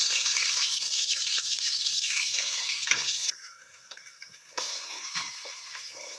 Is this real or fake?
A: fake